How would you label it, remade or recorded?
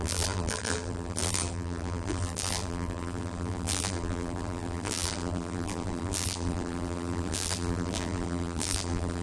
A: remade